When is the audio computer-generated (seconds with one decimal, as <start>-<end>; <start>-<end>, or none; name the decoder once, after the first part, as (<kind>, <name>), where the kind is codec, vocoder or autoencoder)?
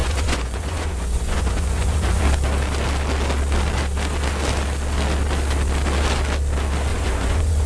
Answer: 0.0-2.2 (vocoder, Vocos); 6.9-7.7